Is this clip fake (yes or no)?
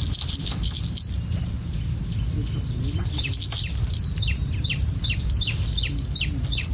no